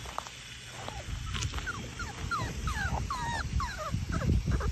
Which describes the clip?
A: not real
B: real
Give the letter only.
B